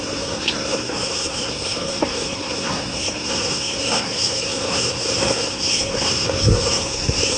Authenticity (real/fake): fake